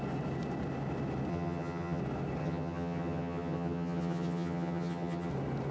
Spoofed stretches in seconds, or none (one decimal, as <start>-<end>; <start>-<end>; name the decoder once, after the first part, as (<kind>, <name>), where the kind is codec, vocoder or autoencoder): 1.3-2.0 (vocoder, HiFi-GAN); 2.4-5.3